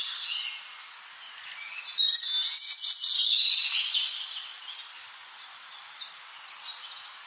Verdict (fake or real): real